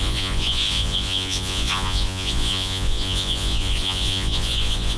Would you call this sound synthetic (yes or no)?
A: yes